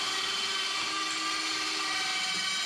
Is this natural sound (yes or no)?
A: yes